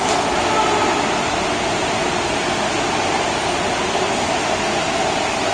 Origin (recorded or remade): recorded